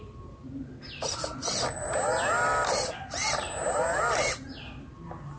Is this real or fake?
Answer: real